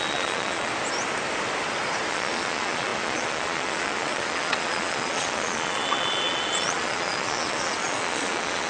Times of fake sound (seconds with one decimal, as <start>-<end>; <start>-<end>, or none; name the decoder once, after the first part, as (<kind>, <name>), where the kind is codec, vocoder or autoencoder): 0.0-0.7 (vocoder, Vocos); 2.1-8.7